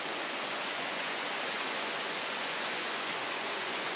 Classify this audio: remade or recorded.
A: remade